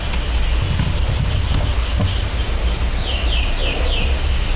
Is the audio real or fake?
real